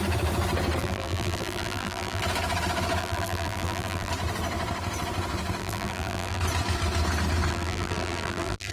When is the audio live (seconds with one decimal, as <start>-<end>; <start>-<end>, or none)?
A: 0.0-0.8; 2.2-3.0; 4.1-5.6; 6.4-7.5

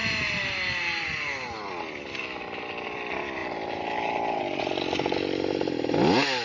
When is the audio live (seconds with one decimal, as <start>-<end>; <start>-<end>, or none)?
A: 0.0-6.4

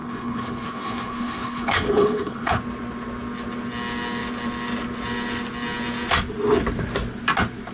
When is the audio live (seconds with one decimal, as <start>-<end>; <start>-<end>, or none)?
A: 2.6-7.7

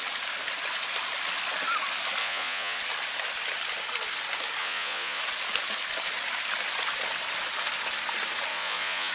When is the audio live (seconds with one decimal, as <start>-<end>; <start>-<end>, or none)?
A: 0.0-2.2; 2.8-4.6; 5.2-8.5

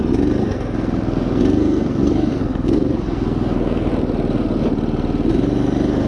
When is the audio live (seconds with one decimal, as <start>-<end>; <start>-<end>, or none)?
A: 0.0-0.4; 3.9-6.1

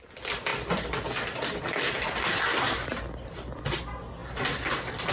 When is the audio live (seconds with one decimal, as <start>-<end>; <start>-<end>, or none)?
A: 0.0-5.1